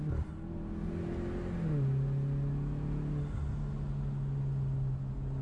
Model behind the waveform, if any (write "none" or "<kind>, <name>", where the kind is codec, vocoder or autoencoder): none